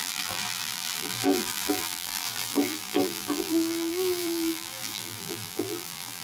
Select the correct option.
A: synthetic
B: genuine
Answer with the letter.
A